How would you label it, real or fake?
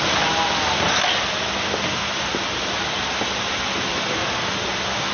real